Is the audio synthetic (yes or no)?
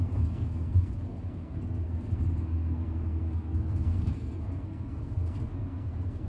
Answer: yes